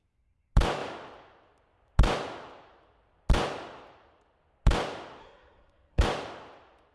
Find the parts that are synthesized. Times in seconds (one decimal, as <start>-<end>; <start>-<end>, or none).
5.2-6.0